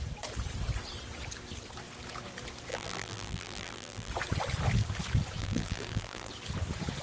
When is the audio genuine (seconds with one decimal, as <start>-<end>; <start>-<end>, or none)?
0.0-2.7; 4.1-5.4; 6.3-7.0